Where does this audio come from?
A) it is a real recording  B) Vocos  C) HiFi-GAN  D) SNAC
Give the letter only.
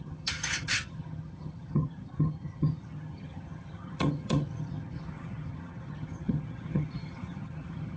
C